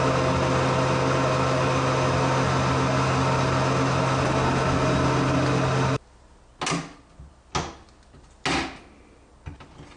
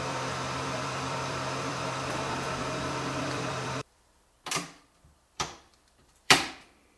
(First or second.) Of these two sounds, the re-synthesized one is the second